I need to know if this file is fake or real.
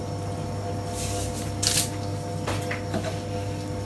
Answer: real